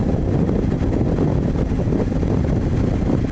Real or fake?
real